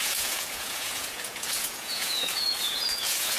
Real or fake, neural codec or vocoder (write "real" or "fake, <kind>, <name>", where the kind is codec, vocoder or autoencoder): fake, vocoder, Vocos